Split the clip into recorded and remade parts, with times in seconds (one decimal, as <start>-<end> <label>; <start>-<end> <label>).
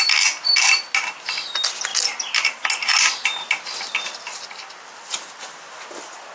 0.0-6.3 recorded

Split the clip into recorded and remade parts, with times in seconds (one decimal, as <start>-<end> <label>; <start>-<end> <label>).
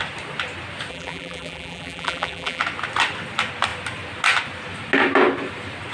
0.0-0.9 recorded; 0.9-2.6 remade; 2.6-5.9 recorded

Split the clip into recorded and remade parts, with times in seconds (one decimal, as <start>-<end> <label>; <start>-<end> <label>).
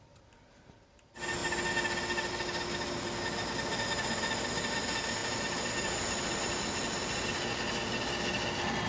0.0-8.9 recorded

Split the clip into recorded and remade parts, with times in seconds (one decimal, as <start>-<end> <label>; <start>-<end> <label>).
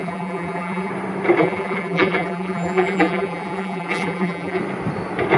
0.0-0.9 remade; 0.9-1.4 recorded; 1.4-4.6 remade; 4.6-5.4 recorded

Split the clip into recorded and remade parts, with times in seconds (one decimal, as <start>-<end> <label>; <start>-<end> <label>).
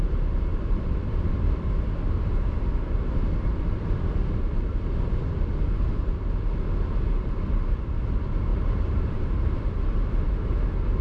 0.0-0.5 recorded; 0.5-1.3 remade; 1.3-8.5 recorded; 8.5-10.4 remade; 10.4-11.0 recorded